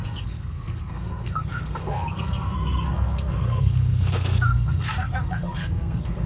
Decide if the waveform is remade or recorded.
remade